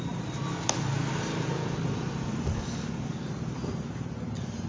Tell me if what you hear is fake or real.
real